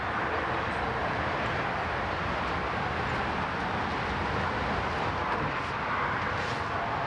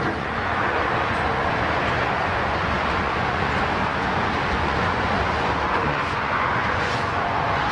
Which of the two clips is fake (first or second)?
second